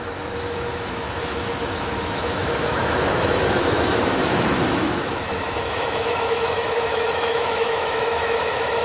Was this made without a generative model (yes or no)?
no